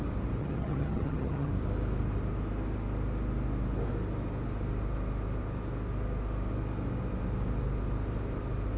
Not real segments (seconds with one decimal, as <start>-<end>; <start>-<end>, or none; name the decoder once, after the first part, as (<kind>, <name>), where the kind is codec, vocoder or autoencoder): 0.4-1.5 (vocoder, HiFi-GAN)